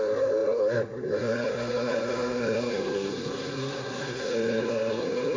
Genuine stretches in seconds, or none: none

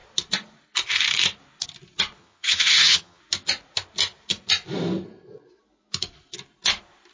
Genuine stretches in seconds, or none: 0.0-2.2; 3.2-7.1

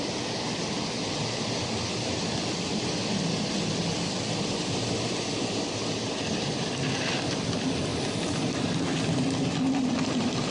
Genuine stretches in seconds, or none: 0.0-10.5